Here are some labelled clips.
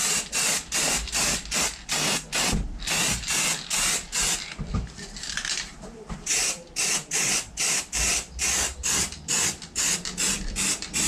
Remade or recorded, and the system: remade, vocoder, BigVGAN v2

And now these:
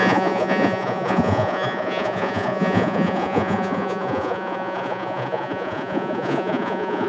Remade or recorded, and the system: remade, vocoder, Vocos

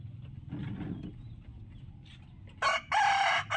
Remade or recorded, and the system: recorded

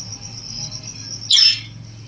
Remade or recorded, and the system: recorded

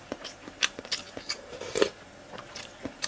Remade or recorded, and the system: remade, vocoder, BigVGAN v2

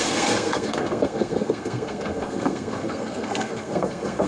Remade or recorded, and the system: remade, codec, SNAC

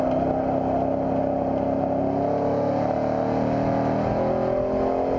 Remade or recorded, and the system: recorded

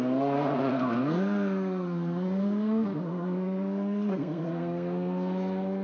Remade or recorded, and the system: remade, codec, SNAC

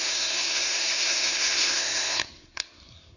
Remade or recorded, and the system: remade, codec, SNAC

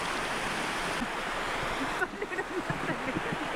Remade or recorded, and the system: recorded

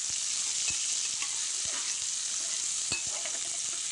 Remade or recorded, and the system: recorded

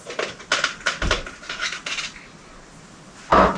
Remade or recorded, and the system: recorded